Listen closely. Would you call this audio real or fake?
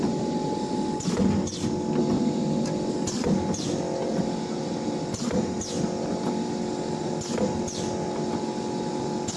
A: real